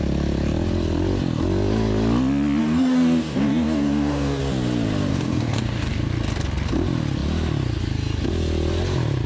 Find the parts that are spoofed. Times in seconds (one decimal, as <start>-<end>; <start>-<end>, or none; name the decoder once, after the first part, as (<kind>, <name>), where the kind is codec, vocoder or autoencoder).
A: 2.6-4.4 (codec, DAC); 5.1-5.9